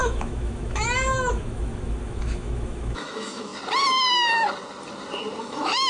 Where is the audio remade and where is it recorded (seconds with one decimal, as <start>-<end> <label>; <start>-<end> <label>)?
0.0-3.5 remade; 3.5-5.4 recorded; 5.4-5.9 remade